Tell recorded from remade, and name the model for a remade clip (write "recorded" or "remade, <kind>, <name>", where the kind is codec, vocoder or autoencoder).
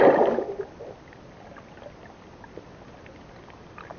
recorded